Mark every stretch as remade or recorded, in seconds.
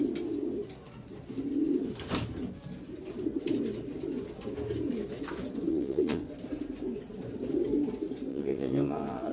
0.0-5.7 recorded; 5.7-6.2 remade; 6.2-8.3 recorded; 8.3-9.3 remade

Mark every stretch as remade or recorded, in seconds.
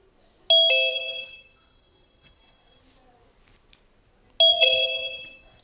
0.0-0.9 recorded; 0.9-2.8 remade; 2.8-4.5 recorded; 4.5-5.6 remade